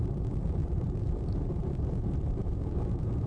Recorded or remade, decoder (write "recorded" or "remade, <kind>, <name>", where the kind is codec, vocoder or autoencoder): remade, vocoder, BigVGAN v2